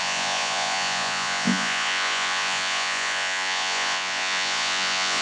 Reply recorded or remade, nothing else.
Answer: remade